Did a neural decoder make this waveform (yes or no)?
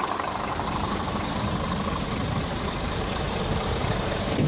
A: yes